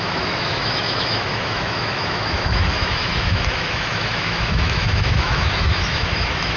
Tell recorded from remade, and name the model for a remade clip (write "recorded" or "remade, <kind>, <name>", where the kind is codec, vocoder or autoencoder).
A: remade, autoencoder, DAC-VAE